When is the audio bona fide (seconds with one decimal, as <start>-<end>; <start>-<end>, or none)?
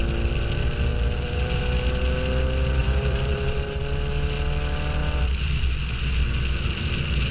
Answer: 0.0-0.9; 1.6-2.8; 3.8-7.3